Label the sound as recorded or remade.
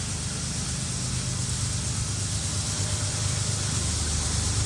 recorded